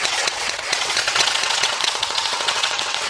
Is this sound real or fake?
fake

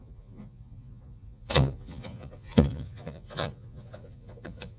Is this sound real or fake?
fake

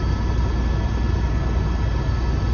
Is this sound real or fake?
real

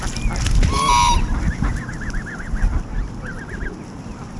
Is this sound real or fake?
real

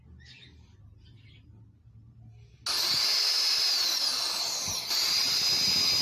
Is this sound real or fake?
real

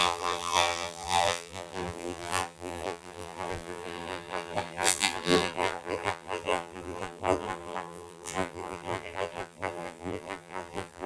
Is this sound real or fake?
fake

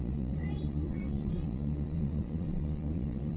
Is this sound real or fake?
fake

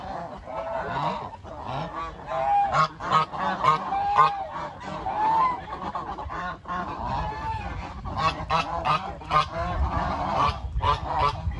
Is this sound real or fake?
real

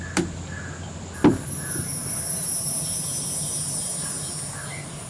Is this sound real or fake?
real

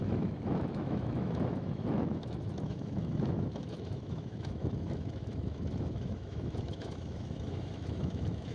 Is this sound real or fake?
fake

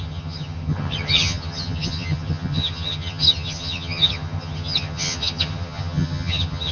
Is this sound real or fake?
fake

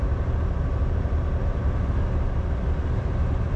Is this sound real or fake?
real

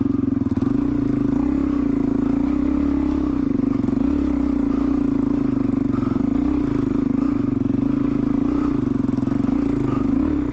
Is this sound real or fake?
real